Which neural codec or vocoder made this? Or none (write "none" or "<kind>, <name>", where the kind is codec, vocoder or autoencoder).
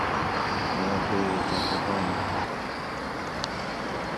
none